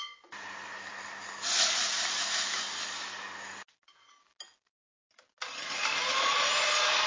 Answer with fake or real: real